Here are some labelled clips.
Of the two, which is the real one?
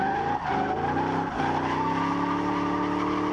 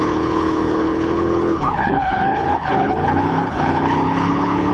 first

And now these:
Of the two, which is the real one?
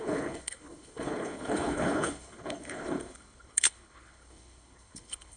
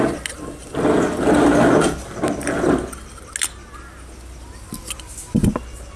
second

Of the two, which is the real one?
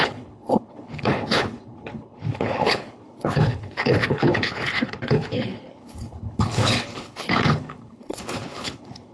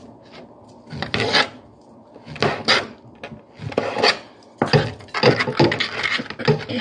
second